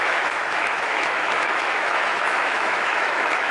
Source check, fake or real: fake